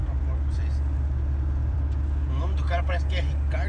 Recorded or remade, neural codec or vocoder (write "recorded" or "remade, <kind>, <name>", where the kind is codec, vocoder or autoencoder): recorded